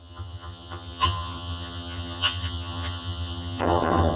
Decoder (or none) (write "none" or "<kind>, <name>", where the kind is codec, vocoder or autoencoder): vocoder, HiFi-GAN